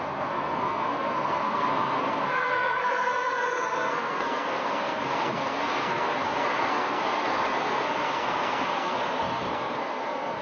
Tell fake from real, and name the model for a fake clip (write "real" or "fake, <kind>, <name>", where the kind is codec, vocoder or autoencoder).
fake, codec, SNAC